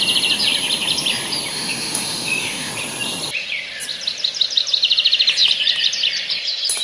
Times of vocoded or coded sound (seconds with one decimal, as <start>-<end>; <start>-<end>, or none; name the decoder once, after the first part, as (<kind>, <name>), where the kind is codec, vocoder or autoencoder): 1.5-2.7 (autoencoder, DAC-VAE)